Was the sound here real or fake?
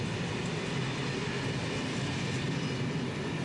real